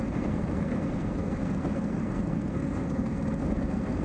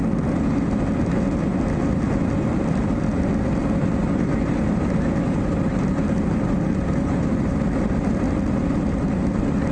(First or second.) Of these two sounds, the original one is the second